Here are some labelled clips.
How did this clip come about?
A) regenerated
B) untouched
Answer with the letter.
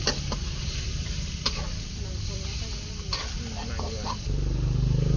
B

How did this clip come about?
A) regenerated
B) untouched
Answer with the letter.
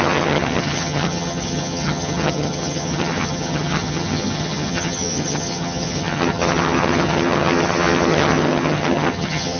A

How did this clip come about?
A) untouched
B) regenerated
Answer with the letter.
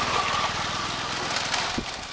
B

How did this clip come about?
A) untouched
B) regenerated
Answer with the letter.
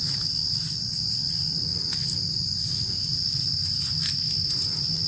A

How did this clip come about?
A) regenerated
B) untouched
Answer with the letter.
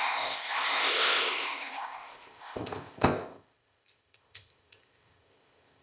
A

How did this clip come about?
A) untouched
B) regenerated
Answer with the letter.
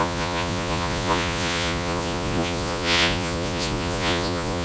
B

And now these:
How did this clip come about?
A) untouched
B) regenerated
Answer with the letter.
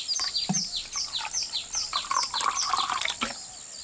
A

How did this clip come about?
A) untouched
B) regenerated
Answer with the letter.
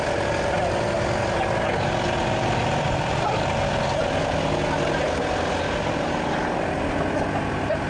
A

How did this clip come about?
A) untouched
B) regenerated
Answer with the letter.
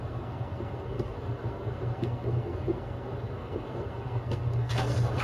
B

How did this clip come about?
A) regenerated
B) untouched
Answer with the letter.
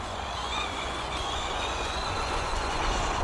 A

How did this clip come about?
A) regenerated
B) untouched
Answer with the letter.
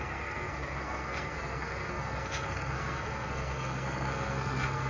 A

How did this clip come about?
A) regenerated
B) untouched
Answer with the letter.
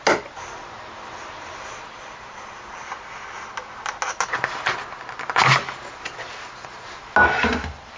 B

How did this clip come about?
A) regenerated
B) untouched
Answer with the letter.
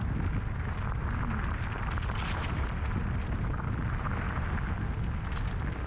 B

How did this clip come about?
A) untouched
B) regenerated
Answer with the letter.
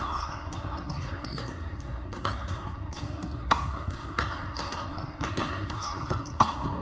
B